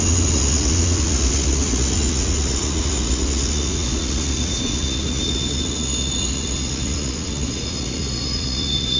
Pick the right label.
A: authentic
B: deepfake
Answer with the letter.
B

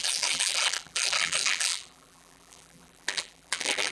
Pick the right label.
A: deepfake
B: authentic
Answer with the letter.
A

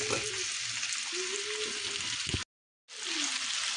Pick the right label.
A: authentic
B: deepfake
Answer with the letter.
A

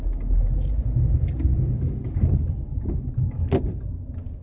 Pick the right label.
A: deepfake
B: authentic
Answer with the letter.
B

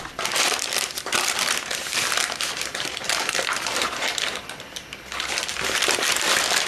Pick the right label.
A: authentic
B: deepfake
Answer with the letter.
B